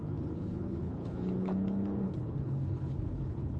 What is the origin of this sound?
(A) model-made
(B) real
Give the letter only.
A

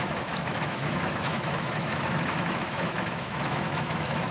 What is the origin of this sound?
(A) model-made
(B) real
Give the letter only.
A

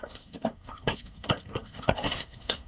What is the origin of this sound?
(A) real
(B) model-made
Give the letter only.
B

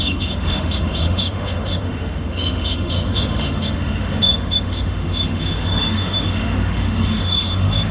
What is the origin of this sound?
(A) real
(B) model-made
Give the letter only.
B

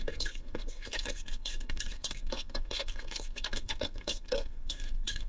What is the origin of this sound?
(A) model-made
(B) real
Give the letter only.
A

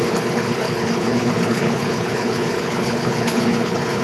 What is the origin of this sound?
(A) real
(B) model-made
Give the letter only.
B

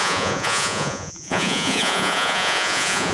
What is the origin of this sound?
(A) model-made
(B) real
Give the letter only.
A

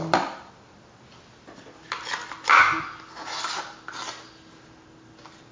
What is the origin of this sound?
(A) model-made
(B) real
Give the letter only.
B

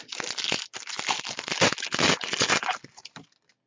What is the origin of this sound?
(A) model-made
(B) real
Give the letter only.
B